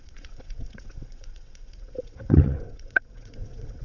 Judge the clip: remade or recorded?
remade